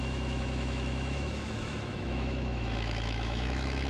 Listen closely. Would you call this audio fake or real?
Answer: fake